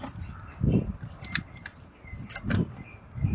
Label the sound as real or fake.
real